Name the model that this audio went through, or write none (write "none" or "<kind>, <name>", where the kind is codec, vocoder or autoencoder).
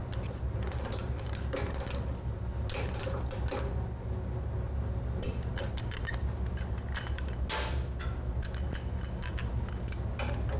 none